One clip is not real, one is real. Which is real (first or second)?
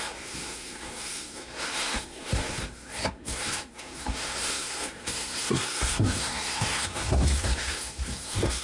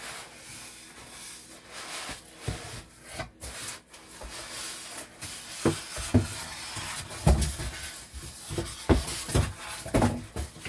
second